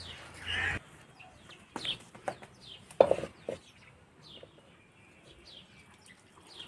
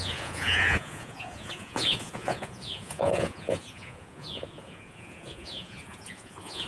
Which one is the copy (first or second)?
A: second